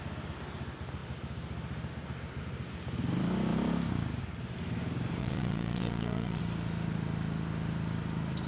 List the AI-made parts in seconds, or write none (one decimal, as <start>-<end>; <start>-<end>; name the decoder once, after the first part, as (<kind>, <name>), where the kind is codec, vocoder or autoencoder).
5.2-6.4 (vocoder, Vocos)